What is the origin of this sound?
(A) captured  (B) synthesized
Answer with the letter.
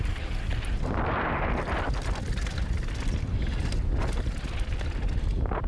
A